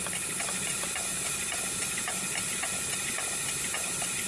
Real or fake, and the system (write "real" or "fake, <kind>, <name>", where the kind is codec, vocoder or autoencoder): real